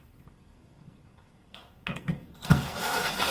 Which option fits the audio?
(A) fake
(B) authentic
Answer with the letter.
A